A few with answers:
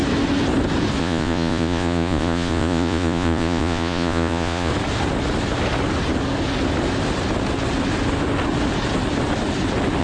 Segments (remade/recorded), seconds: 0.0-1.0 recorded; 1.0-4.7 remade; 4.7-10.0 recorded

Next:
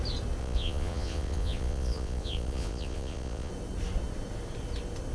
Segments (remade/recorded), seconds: 0.0-0.4 recorded; 0.4-3.5 remade; 3.5-5.1 recorded

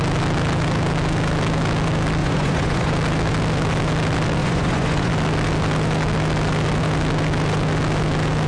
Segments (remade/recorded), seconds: 0.0-2.2 recorded; 2.2-2.9 remade; 2.9-4.4 recorded; 4.4-5.1 remade; 5.1-8.5 recorded